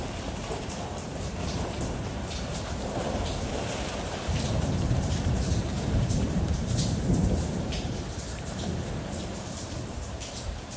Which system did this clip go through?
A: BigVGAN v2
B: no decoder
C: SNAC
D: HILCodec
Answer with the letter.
A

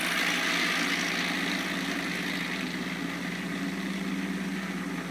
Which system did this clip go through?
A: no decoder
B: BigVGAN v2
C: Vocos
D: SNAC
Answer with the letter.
A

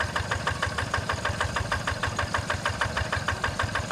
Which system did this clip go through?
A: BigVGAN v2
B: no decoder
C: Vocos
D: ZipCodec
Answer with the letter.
B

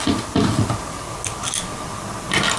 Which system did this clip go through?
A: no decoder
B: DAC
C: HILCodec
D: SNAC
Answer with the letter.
A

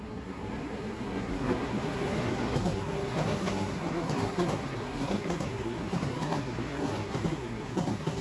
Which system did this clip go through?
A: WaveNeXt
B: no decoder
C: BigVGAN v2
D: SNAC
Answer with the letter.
D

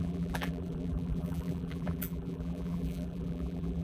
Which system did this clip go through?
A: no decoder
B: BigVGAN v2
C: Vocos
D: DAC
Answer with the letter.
B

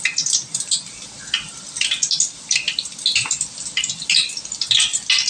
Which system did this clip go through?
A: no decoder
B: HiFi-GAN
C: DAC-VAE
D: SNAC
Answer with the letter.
A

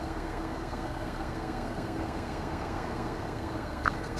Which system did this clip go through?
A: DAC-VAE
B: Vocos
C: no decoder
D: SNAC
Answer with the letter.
D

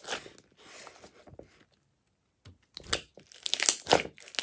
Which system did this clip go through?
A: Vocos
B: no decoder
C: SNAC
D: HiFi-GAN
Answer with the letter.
B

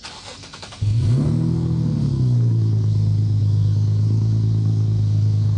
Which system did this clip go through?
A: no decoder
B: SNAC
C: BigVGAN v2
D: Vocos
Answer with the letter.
B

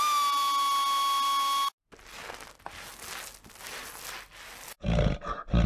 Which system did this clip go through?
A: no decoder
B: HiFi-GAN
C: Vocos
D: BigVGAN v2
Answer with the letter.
A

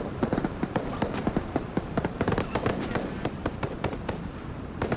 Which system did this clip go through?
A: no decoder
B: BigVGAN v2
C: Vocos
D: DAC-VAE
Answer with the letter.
B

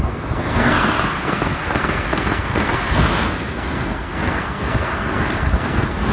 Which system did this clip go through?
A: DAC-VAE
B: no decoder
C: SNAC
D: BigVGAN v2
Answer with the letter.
C